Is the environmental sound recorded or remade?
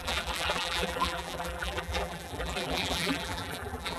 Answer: remade